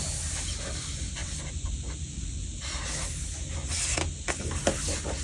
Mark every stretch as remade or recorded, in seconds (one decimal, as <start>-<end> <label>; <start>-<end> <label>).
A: 0.0-5.2 recorded